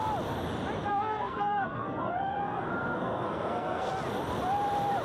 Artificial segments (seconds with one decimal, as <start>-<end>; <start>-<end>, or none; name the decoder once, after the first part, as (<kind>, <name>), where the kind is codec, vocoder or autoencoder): 0.9-3.9 (codec, SNAC)